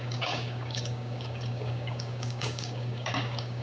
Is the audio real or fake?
fake